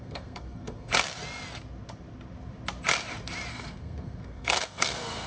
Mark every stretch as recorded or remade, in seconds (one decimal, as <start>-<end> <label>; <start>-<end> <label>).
0.0-0.9 remade; 0.9-3.5 recorded; 3.5-5.3 remade